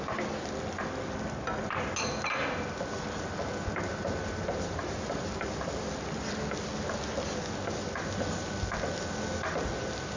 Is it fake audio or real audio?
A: real